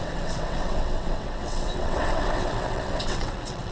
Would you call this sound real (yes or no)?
no